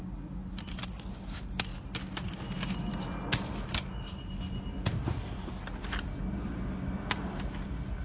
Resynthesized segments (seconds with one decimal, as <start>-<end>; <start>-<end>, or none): none